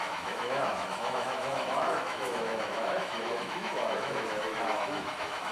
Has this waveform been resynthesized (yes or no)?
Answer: yes